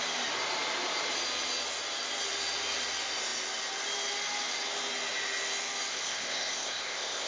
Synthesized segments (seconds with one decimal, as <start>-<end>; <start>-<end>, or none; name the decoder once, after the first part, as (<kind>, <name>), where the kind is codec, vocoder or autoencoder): 5.9-7.3 (codec, ZipCodec)